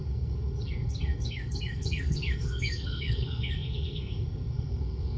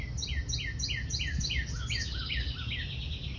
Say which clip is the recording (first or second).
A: second